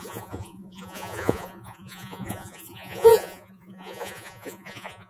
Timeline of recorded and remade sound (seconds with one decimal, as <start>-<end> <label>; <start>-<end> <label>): 0.0-5.1 remade